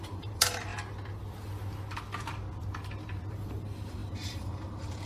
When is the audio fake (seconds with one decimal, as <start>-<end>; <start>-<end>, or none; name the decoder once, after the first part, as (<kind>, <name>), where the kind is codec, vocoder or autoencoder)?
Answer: 0.0-0.7 (vocoder, BigVGAN v2); 3.3-5.1